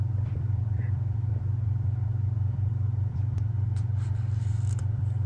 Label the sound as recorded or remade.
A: remade